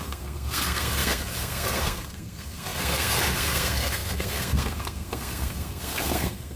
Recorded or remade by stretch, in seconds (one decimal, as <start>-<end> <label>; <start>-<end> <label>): 0.0-6.6 remade